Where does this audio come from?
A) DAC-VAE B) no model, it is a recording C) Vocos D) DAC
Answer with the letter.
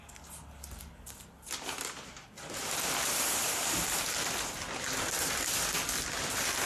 B